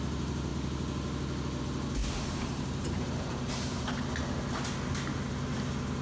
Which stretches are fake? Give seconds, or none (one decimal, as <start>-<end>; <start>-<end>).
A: 2.0-4.1